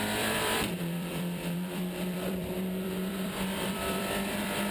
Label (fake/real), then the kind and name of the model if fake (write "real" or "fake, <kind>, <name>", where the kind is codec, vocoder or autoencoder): fake, vocoder, BigVGAN v2